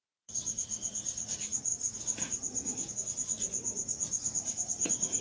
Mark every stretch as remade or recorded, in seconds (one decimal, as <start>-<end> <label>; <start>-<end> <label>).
0.0-5.2 remade